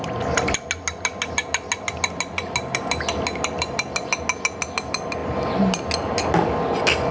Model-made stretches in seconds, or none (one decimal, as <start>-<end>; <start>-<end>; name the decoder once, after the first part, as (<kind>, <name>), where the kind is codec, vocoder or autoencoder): none